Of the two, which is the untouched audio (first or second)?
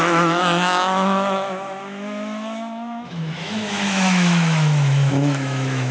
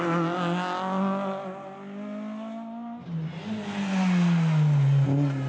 second